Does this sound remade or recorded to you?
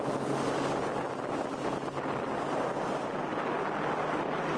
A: recorded